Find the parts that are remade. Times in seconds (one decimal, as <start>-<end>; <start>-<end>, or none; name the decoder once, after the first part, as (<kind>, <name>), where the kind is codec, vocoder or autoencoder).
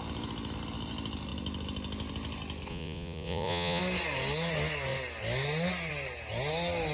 2.7-3.8 (vocoder, Vocos)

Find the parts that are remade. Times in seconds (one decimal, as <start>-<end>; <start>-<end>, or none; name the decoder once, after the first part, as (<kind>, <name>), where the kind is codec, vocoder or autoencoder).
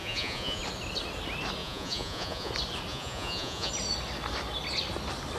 0.0-0.6 (vocoder, Vocos); 1.6-2.5; 2.9-3.7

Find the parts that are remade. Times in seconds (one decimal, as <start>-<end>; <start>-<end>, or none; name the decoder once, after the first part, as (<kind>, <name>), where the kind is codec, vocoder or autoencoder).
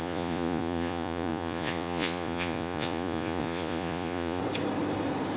0.0-4.4 (vocoder, Vocos)